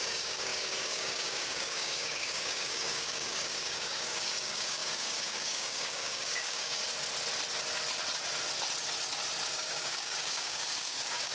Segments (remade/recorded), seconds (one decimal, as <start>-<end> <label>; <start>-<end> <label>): 0.0-6.8 remade; 6.8-9.5 recorded; 9.5-11.3 remade